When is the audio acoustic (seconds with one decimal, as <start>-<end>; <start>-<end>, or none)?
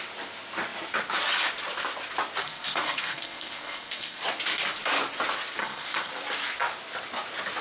0.0-2.4; 4.2-5.6; 6.1-7.6